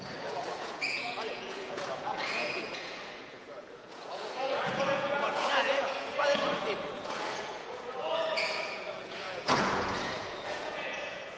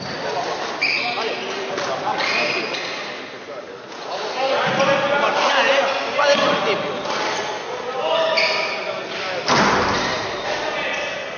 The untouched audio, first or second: second